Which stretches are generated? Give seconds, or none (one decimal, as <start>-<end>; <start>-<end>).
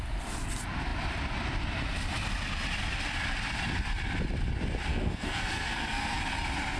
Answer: 4.9-6.2